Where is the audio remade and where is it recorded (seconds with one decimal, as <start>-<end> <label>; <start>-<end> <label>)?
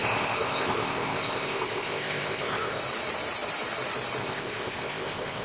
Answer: 0.0-2.8 remade; 2.8-4.2 recorded; 4.2-5.4 remade